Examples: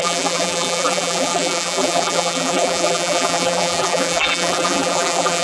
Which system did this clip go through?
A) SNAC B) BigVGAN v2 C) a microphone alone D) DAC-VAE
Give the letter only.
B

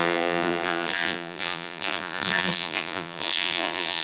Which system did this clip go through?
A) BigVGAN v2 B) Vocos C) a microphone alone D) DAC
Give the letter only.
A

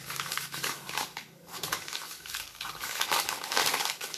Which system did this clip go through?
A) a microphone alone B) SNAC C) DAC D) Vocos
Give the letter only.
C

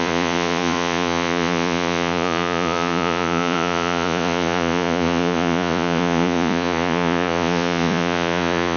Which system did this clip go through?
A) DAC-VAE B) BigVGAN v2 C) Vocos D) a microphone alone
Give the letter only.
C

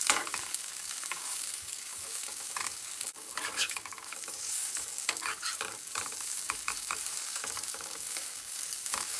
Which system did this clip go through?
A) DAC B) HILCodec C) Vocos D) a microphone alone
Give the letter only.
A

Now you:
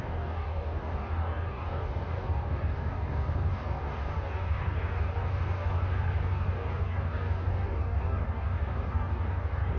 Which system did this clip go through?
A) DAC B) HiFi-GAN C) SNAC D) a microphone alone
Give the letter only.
A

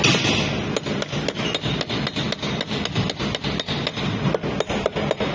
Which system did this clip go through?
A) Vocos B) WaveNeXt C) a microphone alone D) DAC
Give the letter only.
C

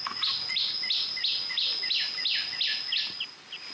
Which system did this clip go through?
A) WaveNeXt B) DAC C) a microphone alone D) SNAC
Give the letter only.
C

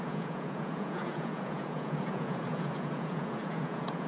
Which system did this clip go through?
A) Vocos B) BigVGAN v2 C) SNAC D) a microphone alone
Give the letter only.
A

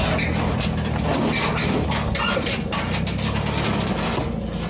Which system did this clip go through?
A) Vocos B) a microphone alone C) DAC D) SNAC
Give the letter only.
B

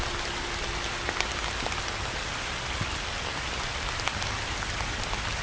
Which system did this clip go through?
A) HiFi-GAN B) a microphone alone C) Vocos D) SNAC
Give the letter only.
B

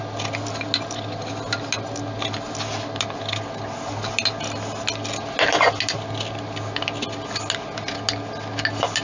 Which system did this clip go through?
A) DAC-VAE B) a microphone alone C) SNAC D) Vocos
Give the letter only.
B